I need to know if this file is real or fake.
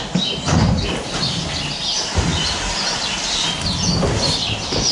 real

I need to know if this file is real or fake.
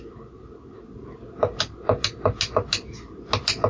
real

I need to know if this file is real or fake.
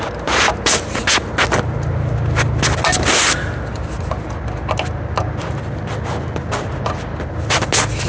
real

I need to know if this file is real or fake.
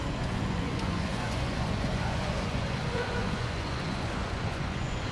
fake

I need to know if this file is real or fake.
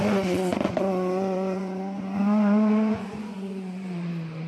fake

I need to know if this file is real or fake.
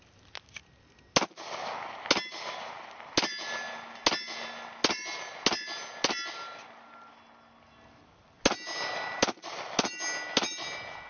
real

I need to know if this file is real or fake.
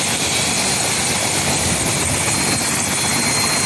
real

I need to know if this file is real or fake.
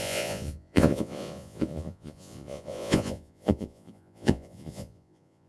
fake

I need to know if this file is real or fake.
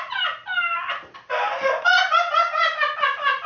real